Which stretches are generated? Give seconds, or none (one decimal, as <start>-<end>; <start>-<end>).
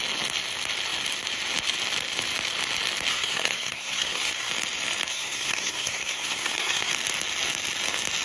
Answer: 3.1-4.5; 5.1-6.9